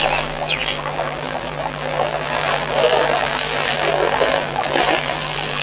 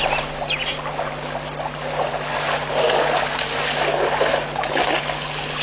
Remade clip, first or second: first